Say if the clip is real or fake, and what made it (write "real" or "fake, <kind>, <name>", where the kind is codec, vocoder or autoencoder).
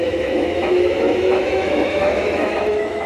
fake, autoencoder, DAC-VAE